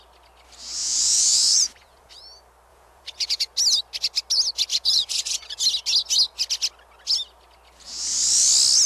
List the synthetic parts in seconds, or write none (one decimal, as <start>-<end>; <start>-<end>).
0.8-2.2; 2.7-3.4; 4.7-5.6